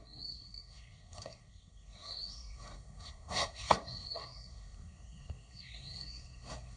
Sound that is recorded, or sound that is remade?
remade